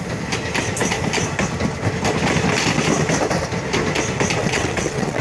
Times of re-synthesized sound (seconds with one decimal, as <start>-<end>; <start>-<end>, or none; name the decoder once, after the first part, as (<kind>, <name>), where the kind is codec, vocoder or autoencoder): 4.4-5.2 (vocoder, WaveNeXt)